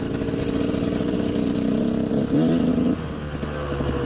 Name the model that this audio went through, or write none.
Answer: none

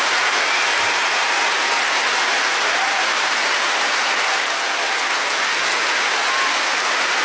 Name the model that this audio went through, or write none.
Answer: none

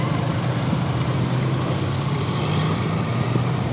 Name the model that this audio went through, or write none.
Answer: none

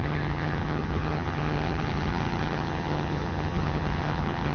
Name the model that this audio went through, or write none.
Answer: vocoder, HiFi-GAN